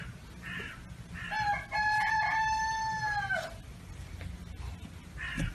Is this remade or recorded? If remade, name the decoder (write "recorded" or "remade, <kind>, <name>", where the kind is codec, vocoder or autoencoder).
recorded